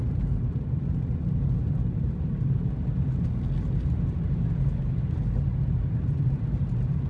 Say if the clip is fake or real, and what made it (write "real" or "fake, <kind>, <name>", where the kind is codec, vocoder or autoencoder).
real